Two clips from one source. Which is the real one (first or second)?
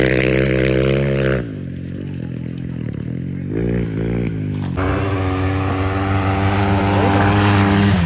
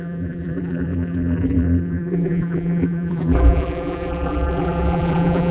first